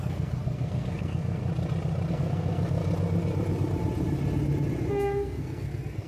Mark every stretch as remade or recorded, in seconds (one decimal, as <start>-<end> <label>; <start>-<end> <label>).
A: 0.0-1.4 remade; 1.4-2.1 recorded; 2.1-2.8 remade; 2.8-4.9 recorded; 4.9-6.1 remade

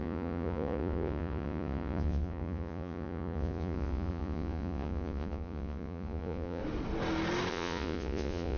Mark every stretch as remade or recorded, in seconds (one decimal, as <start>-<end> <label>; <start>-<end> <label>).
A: 0.0-6.6 remade; 6.6-7.5 recorded; 7.5-8.6 remade

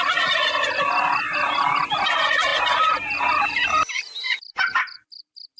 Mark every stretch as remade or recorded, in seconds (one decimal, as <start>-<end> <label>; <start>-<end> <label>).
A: 0.0-4.0 recorded; 4.0-5.6 remade